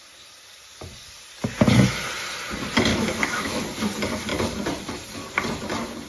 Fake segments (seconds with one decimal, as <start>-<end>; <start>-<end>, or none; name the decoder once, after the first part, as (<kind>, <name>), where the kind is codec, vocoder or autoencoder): 2.9-3.6 (autoencoder, DAC-VAE)